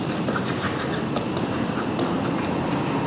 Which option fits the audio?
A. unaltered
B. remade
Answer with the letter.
A